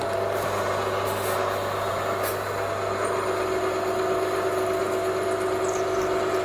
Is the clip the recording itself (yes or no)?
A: yes